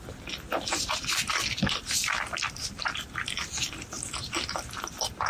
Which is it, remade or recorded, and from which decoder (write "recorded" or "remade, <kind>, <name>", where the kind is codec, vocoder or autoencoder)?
remade, vocoder, BigVGAN v2